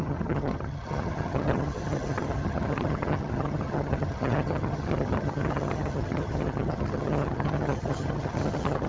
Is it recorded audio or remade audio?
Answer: remade